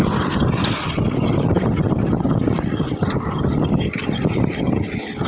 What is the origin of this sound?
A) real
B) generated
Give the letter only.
A